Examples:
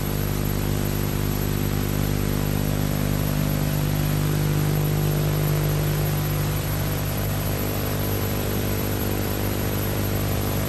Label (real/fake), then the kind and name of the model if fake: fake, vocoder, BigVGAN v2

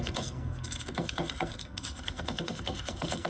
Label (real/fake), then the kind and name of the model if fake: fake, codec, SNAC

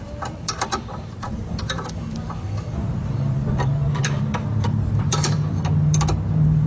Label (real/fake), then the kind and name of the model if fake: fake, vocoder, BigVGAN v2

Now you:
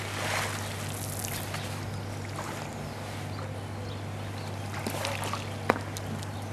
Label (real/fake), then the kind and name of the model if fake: real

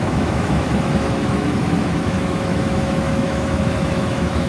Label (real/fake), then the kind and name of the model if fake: fake, autoencoder, DAC-VAE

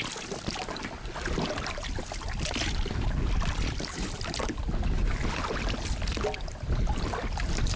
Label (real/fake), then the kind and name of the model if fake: real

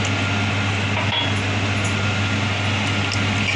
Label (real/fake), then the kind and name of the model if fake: real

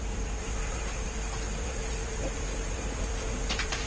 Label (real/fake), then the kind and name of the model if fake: fake, vocoder, BigVGAN v2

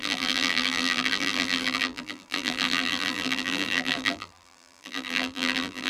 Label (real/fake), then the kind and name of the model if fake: fake, vocoder, BigVGAN v2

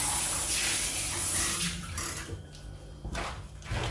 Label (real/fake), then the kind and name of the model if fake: real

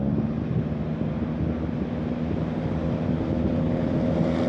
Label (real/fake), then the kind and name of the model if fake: real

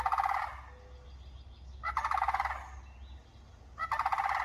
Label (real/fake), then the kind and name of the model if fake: real